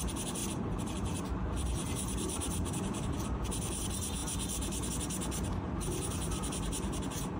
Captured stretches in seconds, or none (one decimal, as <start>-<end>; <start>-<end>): 0.0-0.4; 3.8-7.4